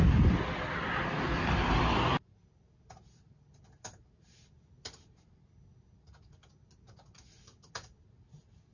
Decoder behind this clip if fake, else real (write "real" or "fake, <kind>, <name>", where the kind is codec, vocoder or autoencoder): real